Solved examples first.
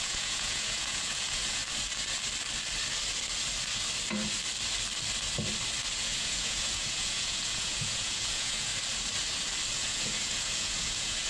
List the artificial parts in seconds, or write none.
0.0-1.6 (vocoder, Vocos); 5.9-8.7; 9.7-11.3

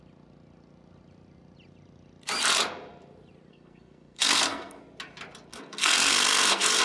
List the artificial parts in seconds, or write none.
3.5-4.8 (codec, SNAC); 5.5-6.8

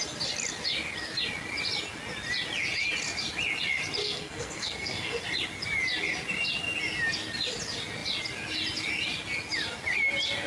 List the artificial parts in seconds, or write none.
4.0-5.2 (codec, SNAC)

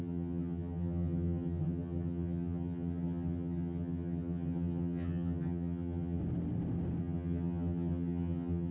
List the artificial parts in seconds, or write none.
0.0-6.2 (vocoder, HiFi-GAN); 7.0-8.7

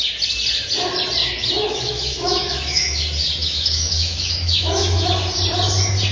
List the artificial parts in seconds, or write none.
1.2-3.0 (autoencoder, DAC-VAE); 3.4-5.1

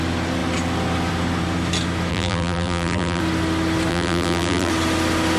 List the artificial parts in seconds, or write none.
2.1-3.2 (vocoder, BigVGAN v2); 3.9-4.7

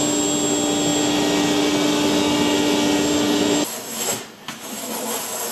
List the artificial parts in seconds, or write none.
none